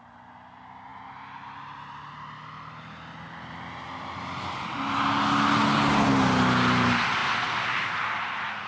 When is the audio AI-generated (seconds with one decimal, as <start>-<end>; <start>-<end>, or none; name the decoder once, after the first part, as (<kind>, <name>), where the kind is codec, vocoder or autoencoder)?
none